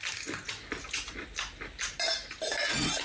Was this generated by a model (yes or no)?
no